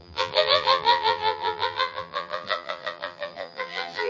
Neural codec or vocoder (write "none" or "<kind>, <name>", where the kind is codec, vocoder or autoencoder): vocoder, BigVGAN v2